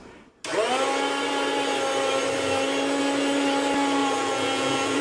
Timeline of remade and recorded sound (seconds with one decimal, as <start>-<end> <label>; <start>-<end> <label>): 0.0-4.0 recorded; 4.0-5.0 remade